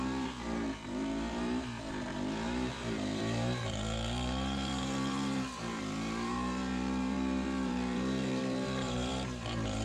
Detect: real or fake fake